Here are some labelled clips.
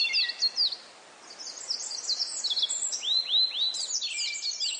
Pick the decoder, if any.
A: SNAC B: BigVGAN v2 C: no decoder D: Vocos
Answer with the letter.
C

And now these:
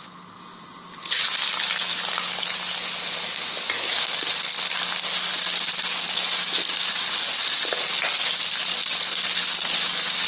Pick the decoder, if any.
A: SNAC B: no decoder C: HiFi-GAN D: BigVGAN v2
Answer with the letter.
B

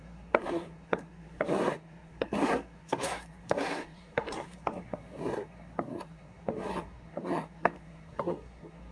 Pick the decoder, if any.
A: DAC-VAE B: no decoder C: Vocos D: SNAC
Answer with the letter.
D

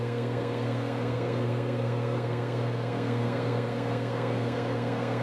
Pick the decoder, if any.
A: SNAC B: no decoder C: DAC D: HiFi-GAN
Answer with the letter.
A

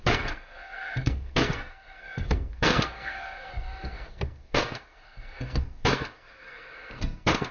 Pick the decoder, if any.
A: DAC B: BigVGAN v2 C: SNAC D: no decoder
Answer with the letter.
C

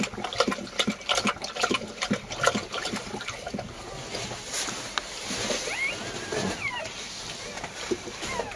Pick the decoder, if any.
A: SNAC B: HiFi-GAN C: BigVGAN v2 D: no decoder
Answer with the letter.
D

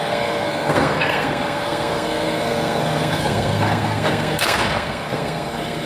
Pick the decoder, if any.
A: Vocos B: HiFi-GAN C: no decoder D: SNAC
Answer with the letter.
D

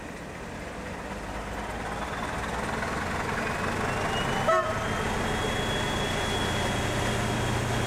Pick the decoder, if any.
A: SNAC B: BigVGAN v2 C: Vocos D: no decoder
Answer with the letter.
D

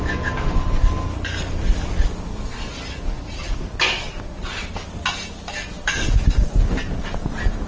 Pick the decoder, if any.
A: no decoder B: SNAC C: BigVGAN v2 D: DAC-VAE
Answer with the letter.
A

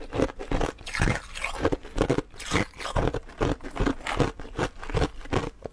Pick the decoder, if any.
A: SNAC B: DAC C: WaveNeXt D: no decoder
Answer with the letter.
D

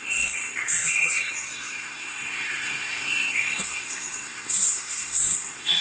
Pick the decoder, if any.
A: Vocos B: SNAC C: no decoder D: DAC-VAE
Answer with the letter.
B